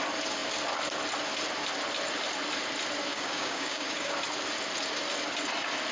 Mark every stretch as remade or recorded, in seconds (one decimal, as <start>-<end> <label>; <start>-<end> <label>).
0.0-3.1 recorded; 3.1-4.1 remade; 4.1-5.9 recorded